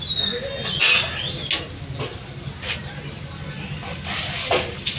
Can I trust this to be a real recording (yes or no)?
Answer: yes